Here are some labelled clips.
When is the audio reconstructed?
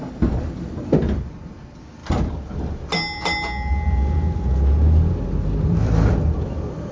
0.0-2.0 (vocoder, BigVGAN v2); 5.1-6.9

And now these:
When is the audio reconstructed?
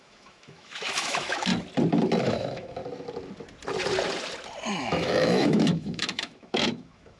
0.0-1.5 (autoencoder, DAC-VAE); 2.2-2.8; 4.8-7.2